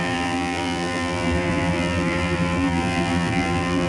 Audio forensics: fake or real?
fake